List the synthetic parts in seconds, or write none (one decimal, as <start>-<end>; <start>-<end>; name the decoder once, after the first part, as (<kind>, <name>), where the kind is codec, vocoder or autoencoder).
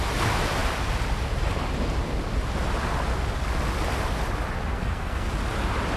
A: 4.7-5.3 (codec, SNAC)